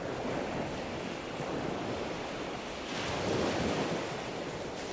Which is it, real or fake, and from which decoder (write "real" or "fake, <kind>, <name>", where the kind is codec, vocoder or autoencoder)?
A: real